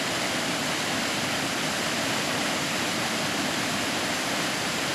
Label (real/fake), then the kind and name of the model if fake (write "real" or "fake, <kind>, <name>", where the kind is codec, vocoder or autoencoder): fake, vocoder, BigVGAN v2